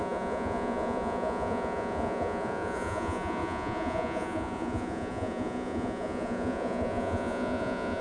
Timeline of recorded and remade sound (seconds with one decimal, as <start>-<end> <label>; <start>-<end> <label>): 0.0-8.0 remade